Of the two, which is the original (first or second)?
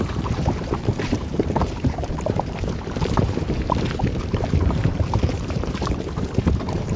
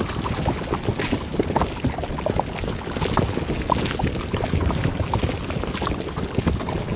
second